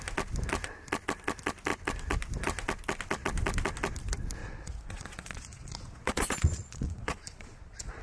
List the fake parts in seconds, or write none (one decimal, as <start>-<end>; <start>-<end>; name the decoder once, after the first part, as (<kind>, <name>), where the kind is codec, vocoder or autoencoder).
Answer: 4.4-8.0 (vocoder, Vocos)